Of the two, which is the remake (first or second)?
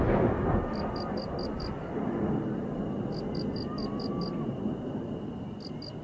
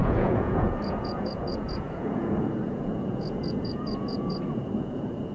second